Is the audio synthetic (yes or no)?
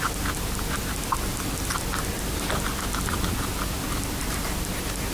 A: no